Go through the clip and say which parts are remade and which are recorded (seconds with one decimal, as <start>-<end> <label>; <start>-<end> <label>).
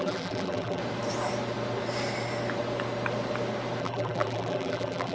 0.0-0.8 remade; 0.8-3.8 recorded; 3.8-5.1 remade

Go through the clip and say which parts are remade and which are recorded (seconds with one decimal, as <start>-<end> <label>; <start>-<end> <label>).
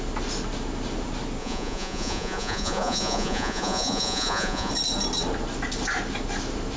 0.0-1.4 recorded; 1.4-4.7 remade; 4.7-6.8 recorded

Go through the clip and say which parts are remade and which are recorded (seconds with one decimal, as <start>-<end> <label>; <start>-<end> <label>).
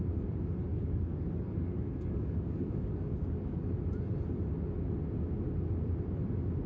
0.0-0.7 recorded; 0.7-3.7 remade; 3.7-6.7 recorded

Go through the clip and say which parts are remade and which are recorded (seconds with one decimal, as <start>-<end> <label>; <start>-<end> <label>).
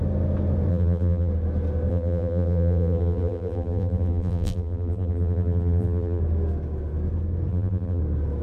0.0-0.7 recorded; 0.7-1.3 remade; 1.3-1.9 recorded; 1.9-6.2 remade; 6.2-7.5 recorded; 7.5-8.0 remade; 8.0-8.4 recorded